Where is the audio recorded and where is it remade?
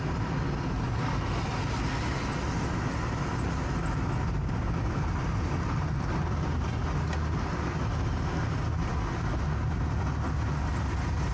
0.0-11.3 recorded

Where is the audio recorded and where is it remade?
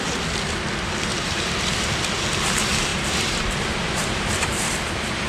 0.0-1.1 recorded; 1.1-1.9 remade; 1.9-2.9 recorded; 2.9-4.7 remade; 4.7-5.3 recorded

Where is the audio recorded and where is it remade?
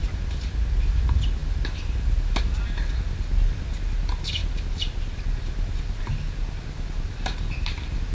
0.0-8.1 recorded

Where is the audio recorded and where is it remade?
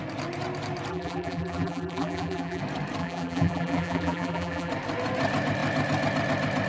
0.0-0.9 recorded; 0.9-2.6 remade; 2.6-3.0 recorded; 3.0-4.7 remade; 4.7-6.7 recorded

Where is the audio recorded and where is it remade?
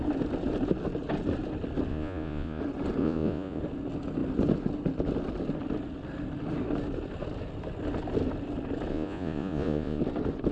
0.0-1.9 recorded; 1.9-2.6 remade; 2.6-3.0 recorded; 3.0-3.6 remade; 3.6-8.9 recorded; 8.9-10.0 remade; 10.0-10.5 recorded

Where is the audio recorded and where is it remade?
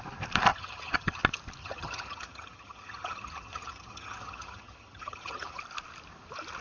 0.0-0.5 recorded; 0.5-1.2 remade; 1.2-1.6 recorded; 1.6-5.6 remade; 5.6-6.6 recorded